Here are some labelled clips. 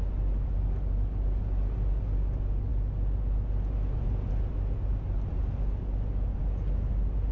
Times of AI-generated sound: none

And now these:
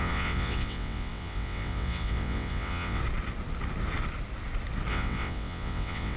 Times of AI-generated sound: 0.0-3.0 (vocoder, WaveNeXt); 4.9-6.2

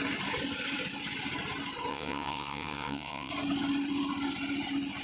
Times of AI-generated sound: 1.9-3.3 (vocoder, WaveNeXt)

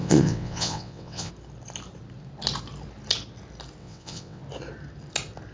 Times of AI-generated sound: 0.0-1.3 (vocoder, WaveNeXt); 3.8-4.4

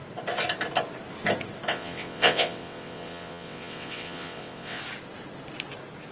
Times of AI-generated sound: 1.7-4.8 (vocoder, WaveNeXt)

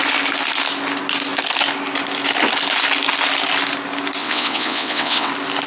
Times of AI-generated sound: 4.2-5.3 (vocoder, WaveNeXt)

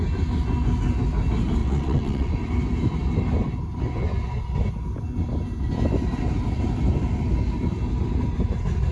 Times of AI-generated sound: 1.6-2.3 (vocoder, WaveNeXt)